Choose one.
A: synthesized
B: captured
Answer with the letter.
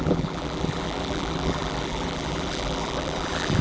A